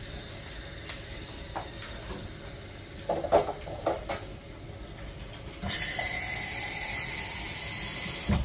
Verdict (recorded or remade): recorded